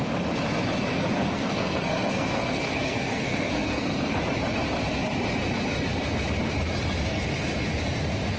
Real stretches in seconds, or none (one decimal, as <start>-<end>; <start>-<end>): 0.0-0.9; 4.2-8.4